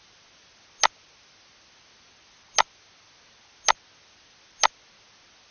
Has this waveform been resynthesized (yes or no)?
no